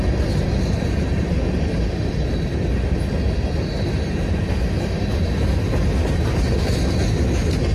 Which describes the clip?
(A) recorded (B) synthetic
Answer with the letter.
A